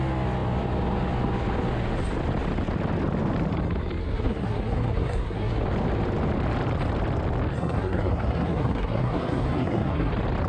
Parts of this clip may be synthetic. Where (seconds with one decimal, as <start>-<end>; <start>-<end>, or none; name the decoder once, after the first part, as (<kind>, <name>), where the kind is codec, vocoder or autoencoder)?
4.0-5.5 (codec, SNAC); 7.5-10.1

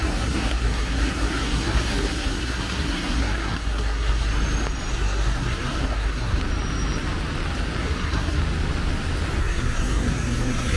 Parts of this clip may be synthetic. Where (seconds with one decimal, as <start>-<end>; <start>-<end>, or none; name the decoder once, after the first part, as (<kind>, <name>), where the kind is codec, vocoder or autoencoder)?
0.0-4.3 (codec, SNAC); 4.9-6.4; 7.8-8.4; 9.4-10.8